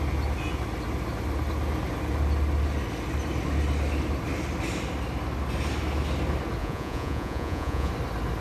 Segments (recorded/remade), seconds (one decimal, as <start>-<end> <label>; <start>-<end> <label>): 0.0-6.6 recorded; 6.6-7.9 remade; 7.9-8.4 recorded